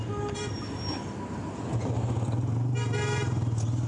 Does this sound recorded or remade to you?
recorded